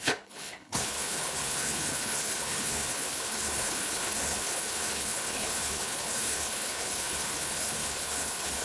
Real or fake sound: fake